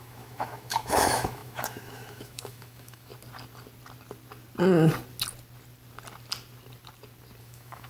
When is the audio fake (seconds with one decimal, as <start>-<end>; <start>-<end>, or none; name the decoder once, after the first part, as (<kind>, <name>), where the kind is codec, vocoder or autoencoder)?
0.0-3.1 (autoencoder, DAC-VAE); 7.4-7.9